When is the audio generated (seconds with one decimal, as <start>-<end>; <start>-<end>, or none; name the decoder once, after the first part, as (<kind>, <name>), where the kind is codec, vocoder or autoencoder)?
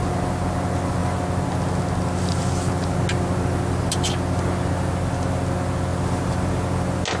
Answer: none